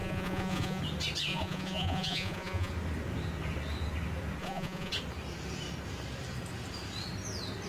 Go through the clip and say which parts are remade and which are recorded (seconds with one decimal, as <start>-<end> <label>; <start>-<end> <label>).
0.0-0.8 remade; 0.8-1.3 recorded; 1.3-2.7 remade; 2.7-4.4 recorded; 4.4-4.9 remade; 4.9-7.7 recorded